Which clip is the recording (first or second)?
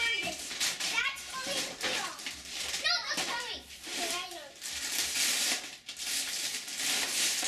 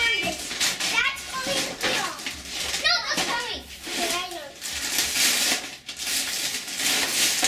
second